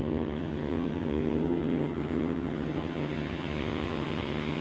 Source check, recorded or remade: remade